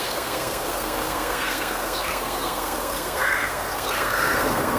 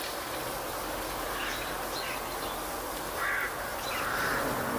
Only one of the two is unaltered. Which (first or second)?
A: second